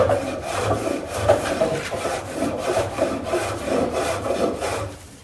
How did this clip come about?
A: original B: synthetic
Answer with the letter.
B